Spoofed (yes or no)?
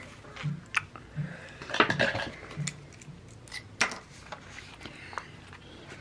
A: no